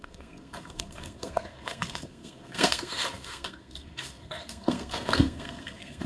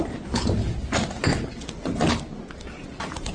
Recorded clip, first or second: second